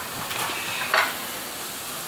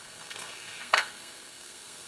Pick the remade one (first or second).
second